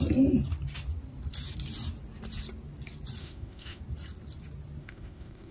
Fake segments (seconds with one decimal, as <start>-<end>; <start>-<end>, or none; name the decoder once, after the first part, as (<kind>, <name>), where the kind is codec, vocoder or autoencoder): 3.2-3.8 (autoencoder, DAC-VAE); 4.8-5.5